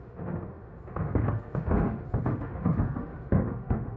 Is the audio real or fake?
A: fake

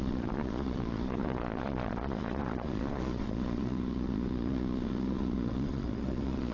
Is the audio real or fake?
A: fake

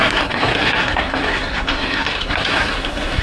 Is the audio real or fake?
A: fake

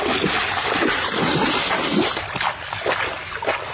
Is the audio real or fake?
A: real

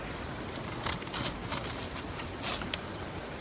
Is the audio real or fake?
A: real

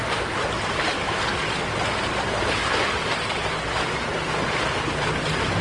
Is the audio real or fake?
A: real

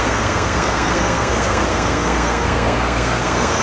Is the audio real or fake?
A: fake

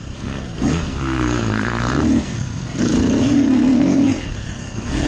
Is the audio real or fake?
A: fake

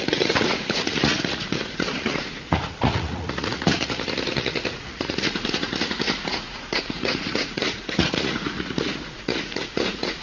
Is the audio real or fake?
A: fake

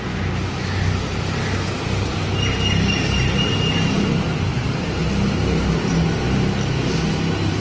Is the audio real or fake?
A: real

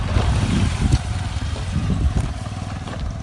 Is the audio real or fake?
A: fake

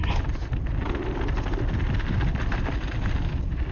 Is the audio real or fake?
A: real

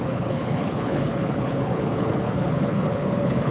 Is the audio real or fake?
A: fake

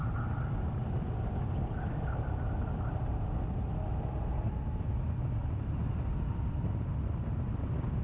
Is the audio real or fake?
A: real